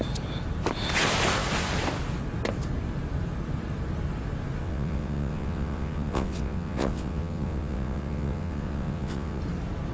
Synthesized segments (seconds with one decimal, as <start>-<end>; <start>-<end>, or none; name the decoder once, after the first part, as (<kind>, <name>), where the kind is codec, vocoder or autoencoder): 4.6-9.4 (vocoder, WaveNeXt)